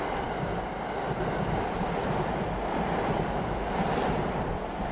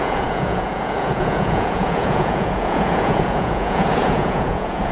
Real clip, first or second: first